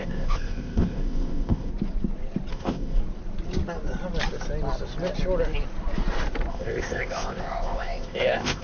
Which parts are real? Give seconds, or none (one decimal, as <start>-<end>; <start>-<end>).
1.7-2.5; 3.0-6.5